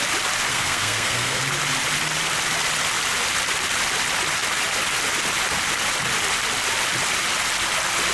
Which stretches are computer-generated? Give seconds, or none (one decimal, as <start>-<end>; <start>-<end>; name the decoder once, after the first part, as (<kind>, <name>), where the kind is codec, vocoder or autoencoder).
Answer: 0.5-1.4 (codec, SNAC)